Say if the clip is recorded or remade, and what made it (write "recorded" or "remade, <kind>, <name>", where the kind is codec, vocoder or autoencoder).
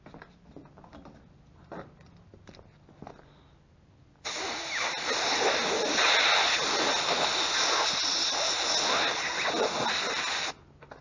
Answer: recorded